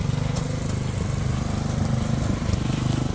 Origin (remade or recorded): recorded